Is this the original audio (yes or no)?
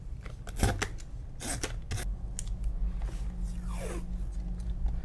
yes